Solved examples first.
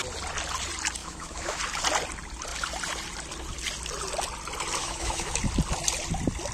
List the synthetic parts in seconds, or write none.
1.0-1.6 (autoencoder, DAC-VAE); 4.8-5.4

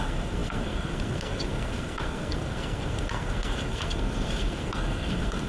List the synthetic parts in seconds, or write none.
0.0-5.5 (codec, SNAC)

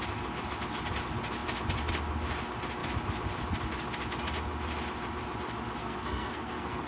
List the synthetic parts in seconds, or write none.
5.8-6.9 (codec, SNAC)

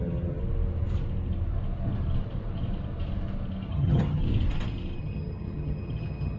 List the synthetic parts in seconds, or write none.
0.0-0.4 (vocoder, HiFi-GAN); 3.7-4.2; 5.0-6.4

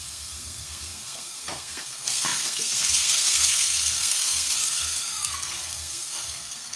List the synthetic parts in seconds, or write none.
0.0-6.8 (codec, SNAC)